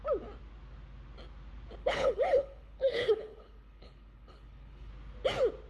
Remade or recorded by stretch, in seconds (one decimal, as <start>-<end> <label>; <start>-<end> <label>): 0.0-1.8 recorded; 1.8-4.9 remade; 4.9-5.7 recorded